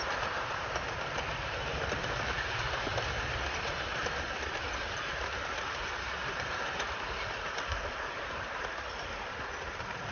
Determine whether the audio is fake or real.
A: fake